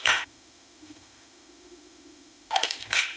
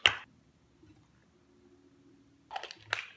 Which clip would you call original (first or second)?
second